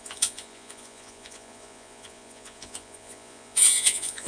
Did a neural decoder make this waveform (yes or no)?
yes